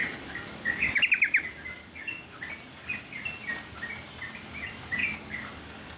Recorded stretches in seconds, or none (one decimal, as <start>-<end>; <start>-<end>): 1.0-1.8; 2.3-5.0